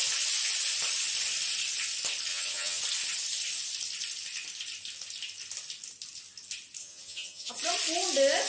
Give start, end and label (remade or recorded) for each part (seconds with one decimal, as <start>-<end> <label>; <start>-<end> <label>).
0.0-2.3 recorded; 2.3-2.8 remade; 2.8-6.8 recorded; 6.8-7.5 remade; 7.5-8.5 recorded